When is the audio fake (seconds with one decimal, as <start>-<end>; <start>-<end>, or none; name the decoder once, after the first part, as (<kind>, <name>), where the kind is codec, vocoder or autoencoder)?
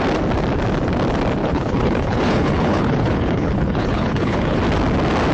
1.4-4.6 (codec, HILCodec)